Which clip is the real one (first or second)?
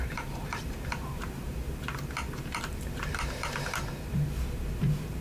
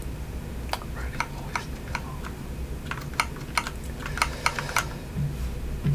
second